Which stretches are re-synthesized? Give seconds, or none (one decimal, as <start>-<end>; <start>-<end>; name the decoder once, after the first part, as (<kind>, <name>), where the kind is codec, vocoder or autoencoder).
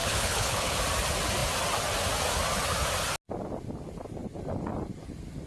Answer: 0.0-0.8 (codec, HILCodec)